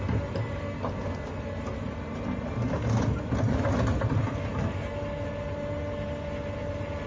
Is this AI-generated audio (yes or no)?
no